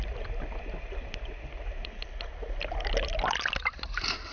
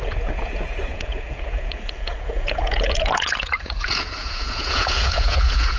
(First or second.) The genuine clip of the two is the first